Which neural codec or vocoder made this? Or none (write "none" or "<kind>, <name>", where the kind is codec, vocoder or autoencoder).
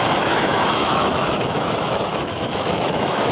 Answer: autoencoder, DAC-VAE